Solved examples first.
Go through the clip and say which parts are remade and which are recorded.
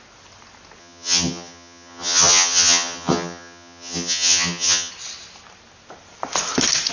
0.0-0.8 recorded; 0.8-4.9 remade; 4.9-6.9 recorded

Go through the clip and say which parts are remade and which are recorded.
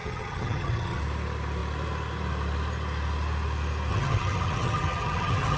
0.0-1.0 remade; 1.0-3.9 recorded; 3.9-5.6 remade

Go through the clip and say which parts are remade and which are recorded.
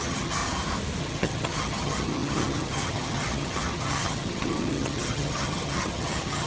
0.0-0.4 remade; 0.4-1.0 recorded; 1.0-6.5 remade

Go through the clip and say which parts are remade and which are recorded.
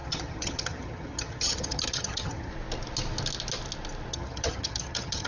0.0-2.5 remade; 2.5-4.1 recorded; 4.1-5.3 remade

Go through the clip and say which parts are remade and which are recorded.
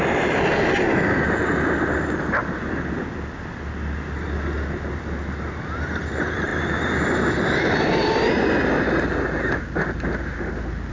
0.0-10.9 recorded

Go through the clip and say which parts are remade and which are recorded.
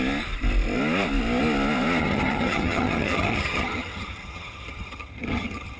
0.0-2.0 recorded; 2.0-5.8 remade